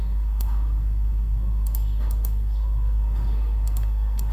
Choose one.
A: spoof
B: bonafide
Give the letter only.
A